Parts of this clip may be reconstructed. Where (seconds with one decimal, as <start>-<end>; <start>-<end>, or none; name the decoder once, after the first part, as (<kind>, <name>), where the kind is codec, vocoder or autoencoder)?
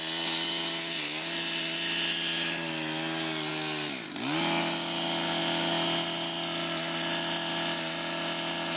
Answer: none